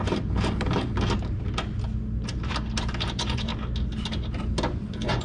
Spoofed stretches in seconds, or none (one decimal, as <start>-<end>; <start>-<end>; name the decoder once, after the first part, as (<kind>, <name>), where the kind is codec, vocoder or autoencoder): 3.1-3.5 (vocoder, Vocos); 4.8-5.2